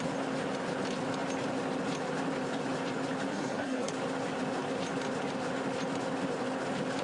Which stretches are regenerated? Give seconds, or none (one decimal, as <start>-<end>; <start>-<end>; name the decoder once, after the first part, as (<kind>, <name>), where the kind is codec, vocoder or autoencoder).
3.3-3.9 (codec, SNAC)